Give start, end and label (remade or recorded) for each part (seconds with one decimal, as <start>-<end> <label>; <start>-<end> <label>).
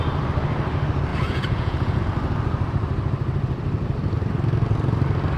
0.0-1.1 recorded; 1.1-2.0 remade; 2.0-5.4 recorded